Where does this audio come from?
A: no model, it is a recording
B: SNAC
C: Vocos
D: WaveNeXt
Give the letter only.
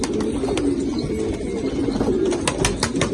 A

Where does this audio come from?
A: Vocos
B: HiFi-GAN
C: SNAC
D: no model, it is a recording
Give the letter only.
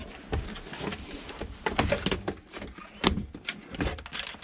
D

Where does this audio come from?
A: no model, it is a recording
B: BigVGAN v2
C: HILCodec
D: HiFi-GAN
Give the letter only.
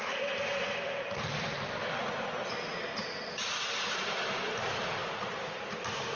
A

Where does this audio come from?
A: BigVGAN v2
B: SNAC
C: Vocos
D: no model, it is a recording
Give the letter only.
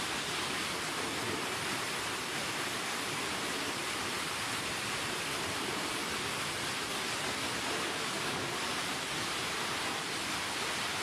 A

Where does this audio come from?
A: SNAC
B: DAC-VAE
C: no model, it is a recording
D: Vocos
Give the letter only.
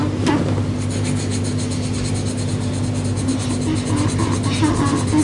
C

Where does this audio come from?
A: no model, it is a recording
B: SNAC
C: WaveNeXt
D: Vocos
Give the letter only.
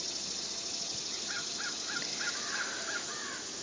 A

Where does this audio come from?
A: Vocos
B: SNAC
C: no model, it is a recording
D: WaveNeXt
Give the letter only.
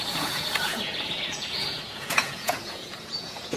A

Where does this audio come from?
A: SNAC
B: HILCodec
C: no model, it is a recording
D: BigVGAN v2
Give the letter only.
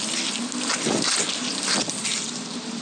C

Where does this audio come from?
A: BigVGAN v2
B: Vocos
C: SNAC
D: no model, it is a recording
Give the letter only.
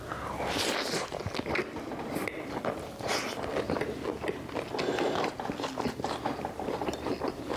D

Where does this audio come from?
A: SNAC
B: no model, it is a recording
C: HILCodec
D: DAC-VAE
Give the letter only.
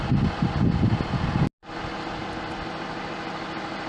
B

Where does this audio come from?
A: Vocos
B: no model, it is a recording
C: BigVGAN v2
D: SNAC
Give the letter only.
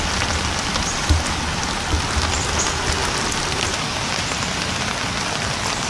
B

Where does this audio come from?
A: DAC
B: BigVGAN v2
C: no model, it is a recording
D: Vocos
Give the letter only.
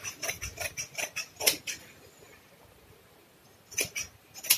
C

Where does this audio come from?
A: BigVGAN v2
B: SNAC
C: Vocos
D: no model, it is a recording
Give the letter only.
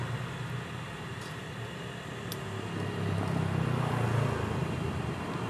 D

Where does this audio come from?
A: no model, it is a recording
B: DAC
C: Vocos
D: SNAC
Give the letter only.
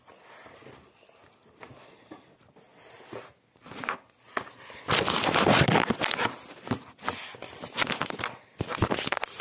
A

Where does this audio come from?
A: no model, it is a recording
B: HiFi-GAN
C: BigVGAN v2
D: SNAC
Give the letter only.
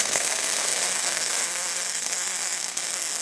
D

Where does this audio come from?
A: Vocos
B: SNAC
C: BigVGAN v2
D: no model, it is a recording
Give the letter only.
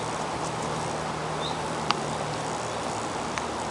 C